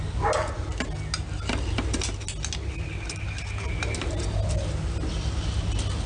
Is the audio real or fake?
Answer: real